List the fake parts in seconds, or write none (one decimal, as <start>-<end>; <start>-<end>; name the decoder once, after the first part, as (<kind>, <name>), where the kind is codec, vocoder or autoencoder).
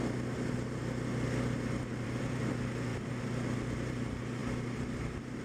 1.9-2.5 (vocoder, BigVGAN v2); 4.4-5.0